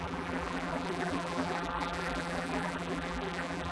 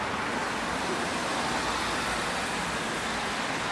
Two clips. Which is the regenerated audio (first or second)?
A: first